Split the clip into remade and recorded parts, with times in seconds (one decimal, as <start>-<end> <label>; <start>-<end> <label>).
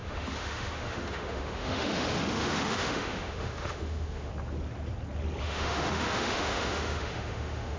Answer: 0.0-4.3 remade; 4.3-5.4 recorded; 5.4-7.8 remade